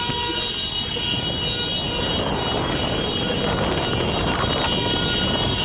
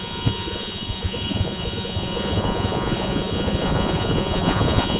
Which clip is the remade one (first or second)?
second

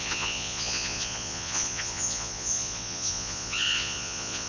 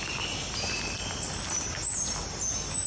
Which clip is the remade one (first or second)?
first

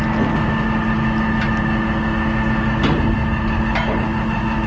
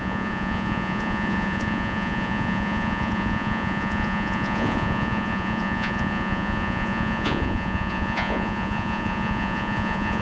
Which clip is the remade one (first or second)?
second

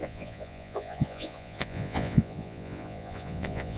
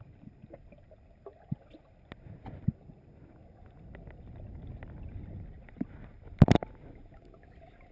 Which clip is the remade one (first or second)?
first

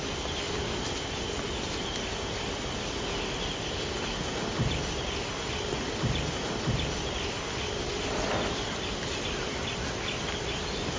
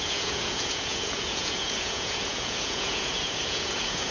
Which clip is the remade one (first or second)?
second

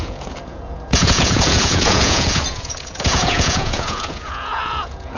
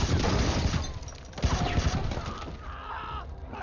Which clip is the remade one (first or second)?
first